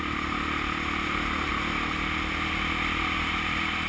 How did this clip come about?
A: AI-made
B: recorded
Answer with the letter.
B